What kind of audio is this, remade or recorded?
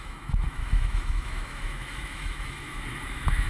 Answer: remade